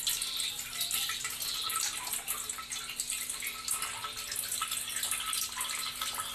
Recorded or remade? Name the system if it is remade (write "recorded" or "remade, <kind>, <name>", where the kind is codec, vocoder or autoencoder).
recorded